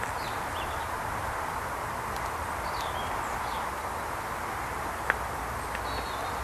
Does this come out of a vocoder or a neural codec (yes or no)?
no